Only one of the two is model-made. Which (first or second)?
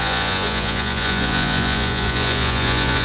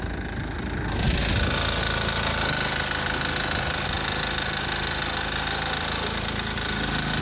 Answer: first